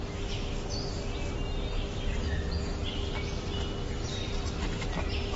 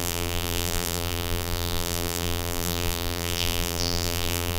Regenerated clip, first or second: second